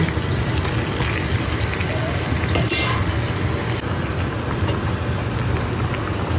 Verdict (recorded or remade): recorded